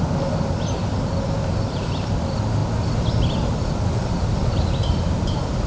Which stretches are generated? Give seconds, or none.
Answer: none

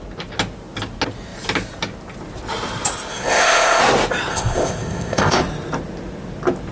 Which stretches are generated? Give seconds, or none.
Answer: 3.1-3.8 (codec, ZipCodec); 4.3-5.4

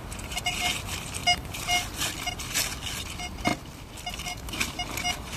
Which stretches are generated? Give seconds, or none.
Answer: 1.2-2.1 (vocoder, BigVGAN v2)